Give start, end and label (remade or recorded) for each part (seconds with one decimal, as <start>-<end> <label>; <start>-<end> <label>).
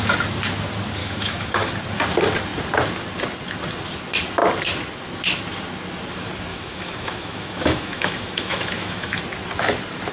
0.0-1.0 recorded; 1.0-1.7 remade; 1.7-6.5 recorded; 6.5-9.2 remade; 9.2-10.1 recorded